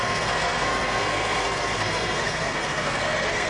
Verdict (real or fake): fake